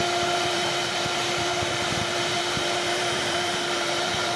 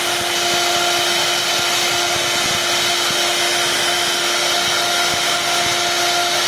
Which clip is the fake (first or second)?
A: first